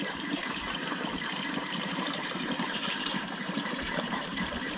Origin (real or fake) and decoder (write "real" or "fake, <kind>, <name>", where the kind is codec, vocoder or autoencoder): fake, vocoder, BigVGAN v2